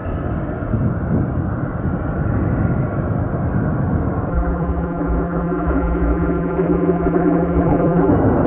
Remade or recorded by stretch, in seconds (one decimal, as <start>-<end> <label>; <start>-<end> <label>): 0.0-4.3 recorded; 4.3-8.1 remade; 8.1-8.5 recorded